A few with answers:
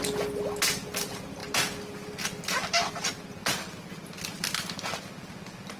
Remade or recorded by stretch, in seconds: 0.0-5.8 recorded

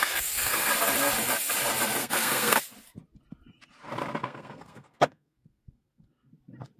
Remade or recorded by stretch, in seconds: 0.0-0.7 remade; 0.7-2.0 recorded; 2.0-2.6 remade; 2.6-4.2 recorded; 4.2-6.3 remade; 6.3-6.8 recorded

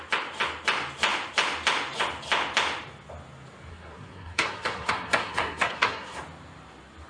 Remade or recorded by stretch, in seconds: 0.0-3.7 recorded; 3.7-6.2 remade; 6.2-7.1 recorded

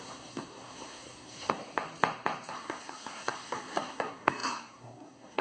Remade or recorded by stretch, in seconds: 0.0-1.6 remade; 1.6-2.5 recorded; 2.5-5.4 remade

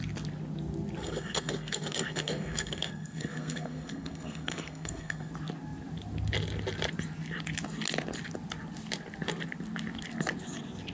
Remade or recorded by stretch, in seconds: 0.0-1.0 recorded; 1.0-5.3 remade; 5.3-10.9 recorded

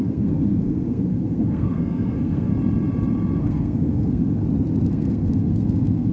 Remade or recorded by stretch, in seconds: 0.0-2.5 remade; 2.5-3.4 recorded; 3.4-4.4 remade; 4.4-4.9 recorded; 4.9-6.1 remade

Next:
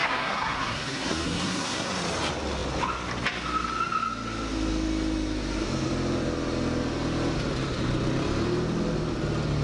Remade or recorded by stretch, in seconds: 0.0-1.9 remade; 1.9-9.6 recorded

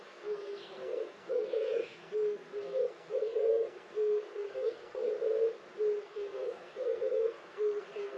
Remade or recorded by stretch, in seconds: 0.0-5.1 remade; 5.1-6.0 recorded; 6.0-8.2 remade